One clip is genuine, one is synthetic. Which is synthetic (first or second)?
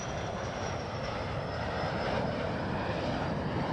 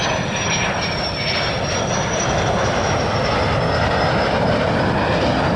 first